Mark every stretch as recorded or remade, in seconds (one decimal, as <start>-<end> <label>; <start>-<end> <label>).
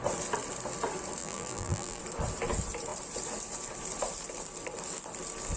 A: 0.0-1.2 recorded; 1.2-2.0 remade; 2.0-5.6 recorded